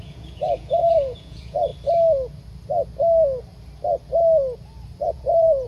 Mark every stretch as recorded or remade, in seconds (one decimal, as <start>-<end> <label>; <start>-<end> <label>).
0.0-1.7 remade; 1.7-5.1 recorded; 5.1-5.7 remade